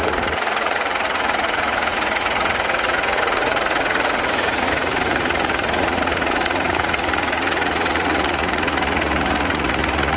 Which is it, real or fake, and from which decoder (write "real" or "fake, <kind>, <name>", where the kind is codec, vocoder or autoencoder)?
fake, vocoder, Vocos